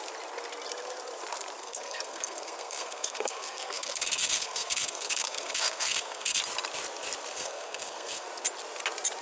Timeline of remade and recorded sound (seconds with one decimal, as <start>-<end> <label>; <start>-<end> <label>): 0.0-1.6 recorded; 1.6-6.4 remade; 6.4-7.3 recorded; 7.3-8.3 remade; 8.3-9.2 recorded